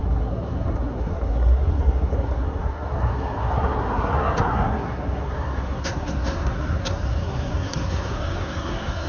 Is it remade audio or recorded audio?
remade